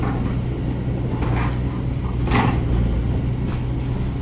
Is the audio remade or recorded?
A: recorded